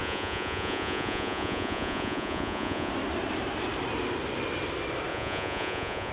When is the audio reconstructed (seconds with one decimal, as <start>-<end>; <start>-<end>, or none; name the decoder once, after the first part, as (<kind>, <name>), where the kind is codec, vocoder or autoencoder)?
0.0-2.9 (vocoder, Vocos); 5.1-6.1